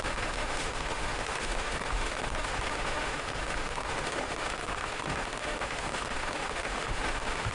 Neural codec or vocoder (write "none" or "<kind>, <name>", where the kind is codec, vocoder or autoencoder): autoencoder, DAC-VAE